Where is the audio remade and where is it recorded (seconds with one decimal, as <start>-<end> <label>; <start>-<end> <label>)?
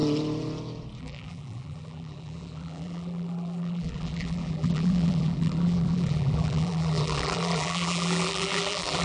0.0-1.0 recorded; 1.0-9.0 remade